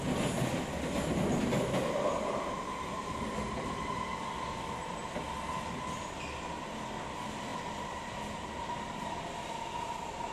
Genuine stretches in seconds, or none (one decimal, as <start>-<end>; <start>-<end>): 0.0-7.5; 9.2-10.3